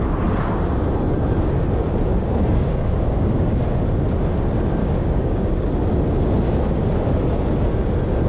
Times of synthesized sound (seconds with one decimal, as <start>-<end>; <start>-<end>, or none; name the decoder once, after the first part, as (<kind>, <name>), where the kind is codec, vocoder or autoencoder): 2.1-3.6 (codec, DAC); 4.8-5.7